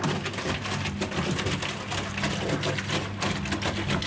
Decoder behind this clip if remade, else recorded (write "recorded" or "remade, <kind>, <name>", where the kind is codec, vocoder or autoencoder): recorded